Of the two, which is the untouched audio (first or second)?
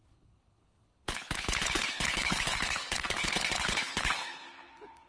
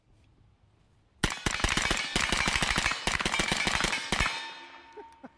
second